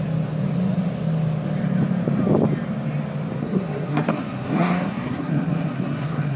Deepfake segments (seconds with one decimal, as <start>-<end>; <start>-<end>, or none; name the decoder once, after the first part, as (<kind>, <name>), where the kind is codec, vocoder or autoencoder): 3.4-6.4 (codec, SNAC)